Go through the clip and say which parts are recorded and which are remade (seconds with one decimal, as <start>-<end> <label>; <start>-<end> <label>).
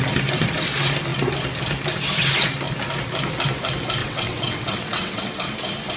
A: 0.0-4.0 recorded; 4.0-5.3 remade; 5.3-6.0 recorded